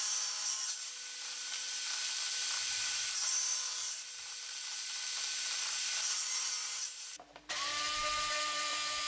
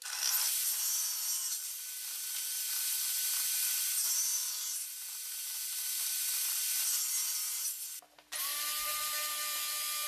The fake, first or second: first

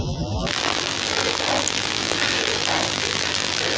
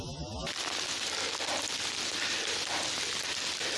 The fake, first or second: first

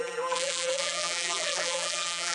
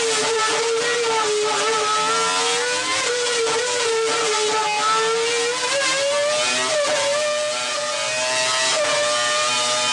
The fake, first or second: first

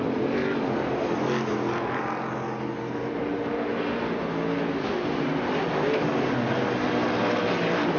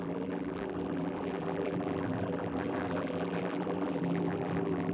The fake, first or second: second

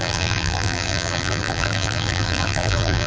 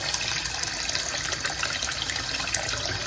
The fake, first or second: first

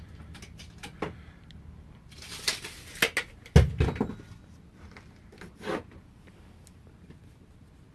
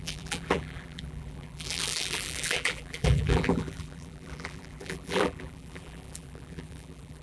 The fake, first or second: second